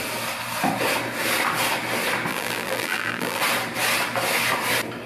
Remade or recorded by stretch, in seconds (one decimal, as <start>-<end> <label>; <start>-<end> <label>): 0.0-2.3 recorded; 2.3-3.4 remade; 3.4-5.1 recorded

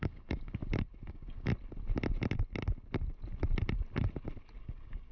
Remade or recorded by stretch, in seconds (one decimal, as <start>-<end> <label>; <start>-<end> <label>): 0.0-0.6 remade; 0.6-1.1 recorded; 1.1-1.5 remade; 1.5-4.6 recorded; 4.6-5.1 remade

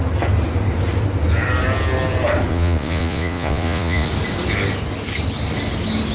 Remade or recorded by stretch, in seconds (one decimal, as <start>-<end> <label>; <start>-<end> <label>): 0.0-2.5 recorded; 2.5-4.1 remade; 4.1-6.1 recorded